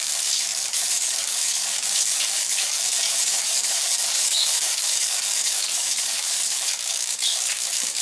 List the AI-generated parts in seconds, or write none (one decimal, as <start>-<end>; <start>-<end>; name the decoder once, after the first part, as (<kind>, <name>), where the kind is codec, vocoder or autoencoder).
0.0-8.0 (codec, DAC)